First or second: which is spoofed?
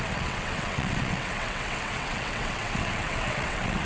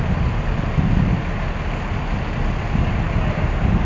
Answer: first